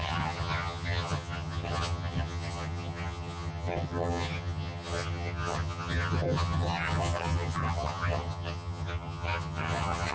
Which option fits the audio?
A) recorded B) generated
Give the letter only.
B